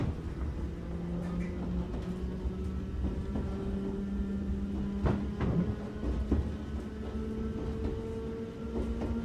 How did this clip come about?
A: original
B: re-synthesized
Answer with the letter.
A